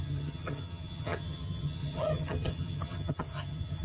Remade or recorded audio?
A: remade